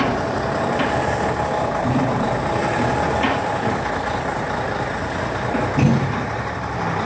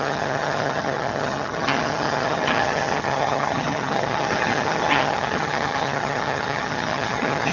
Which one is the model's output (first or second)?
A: second